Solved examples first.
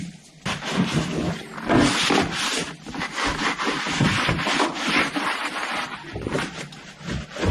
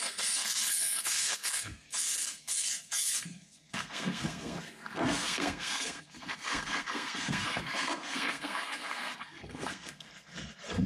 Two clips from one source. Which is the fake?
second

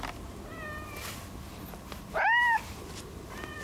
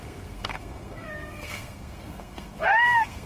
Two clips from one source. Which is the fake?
second